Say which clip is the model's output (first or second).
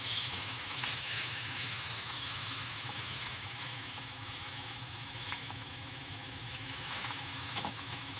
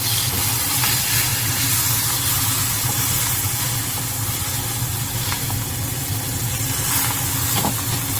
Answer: first